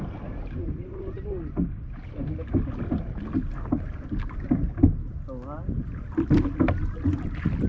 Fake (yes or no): no